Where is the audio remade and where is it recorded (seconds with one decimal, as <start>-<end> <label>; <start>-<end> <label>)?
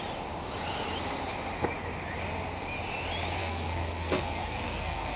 0.0-3.4 recorded; 3.4-5.2 remade